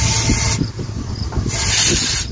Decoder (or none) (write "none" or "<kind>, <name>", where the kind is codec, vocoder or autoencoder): none